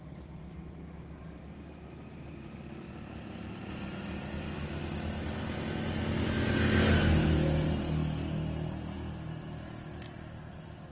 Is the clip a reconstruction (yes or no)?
no